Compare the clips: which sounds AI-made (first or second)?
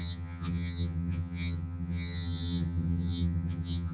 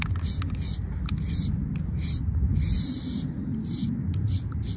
first